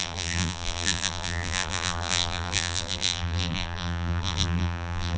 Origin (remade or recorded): remade